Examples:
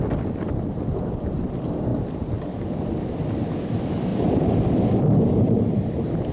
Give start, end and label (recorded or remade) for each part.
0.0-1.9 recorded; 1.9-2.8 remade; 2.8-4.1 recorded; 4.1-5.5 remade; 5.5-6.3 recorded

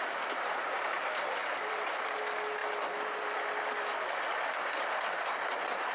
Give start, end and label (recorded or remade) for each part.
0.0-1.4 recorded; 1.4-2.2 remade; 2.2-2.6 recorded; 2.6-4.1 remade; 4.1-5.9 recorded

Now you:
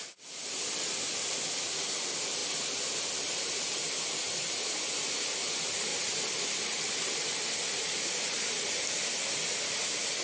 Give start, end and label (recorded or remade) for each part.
0.0-10.2 recorded

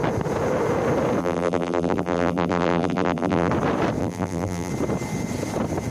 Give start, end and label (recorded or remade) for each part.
0.0-1.2 recorded; 1.2-3.5 remade; 3.5-4.0 recorded; 4.0-4.7 remade; 4.7-5.9 recorded

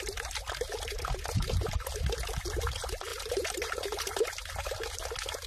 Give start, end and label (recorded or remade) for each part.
0.0-3.1 recorded; 3.1-4.2 remade; 4.2-5.5 recorded